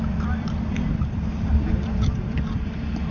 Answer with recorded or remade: remade